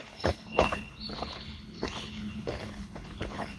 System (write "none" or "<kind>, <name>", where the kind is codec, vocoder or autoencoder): codec, HILCodec